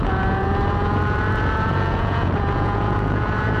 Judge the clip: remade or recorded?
remade